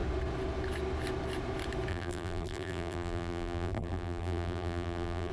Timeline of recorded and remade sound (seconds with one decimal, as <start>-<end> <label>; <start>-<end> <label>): 0.0-1.9 recorded; 1.9-5.3 remade